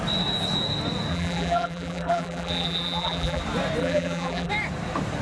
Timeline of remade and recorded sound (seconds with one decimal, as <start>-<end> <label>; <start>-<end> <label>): 0.0-1.1 recorded; 1.1-3.4 remade; 3.4-3.8 recorded; 3.8-4.5 remade; 4.5-5.2 recorded